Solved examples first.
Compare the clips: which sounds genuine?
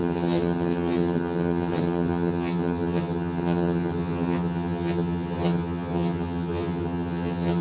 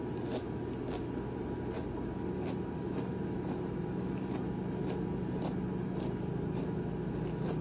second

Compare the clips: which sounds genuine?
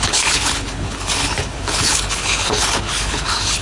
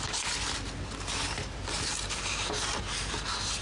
second